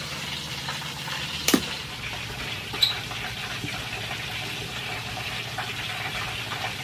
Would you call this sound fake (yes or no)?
yes